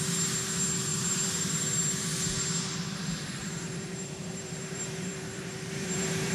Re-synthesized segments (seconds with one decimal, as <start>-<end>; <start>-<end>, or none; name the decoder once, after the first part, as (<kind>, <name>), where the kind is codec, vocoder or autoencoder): 0.9-1.8 (vocoder, BigVGAN v2); 3.4-6.3